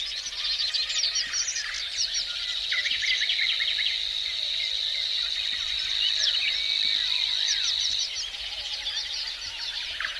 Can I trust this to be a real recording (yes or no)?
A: yes